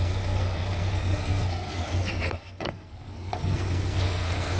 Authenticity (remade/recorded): remade